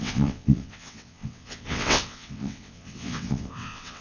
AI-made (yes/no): yes